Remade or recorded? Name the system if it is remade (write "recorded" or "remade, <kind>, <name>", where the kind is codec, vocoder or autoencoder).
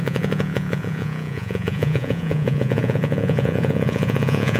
remade, vocoder, Vocos